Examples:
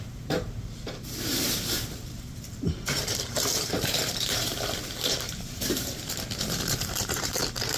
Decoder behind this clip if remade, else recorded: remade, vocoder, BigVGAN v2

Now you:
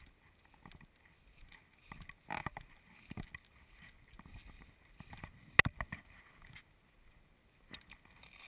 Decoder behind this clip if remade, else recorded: recorded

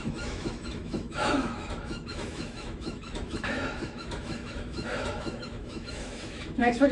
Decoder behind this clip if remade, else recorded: remade, autoencoder, DAC-VAE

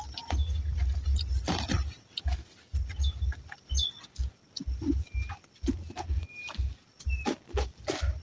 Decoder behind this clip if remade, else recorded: recorded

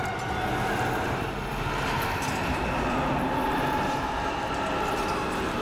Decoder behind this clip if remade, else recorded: recorded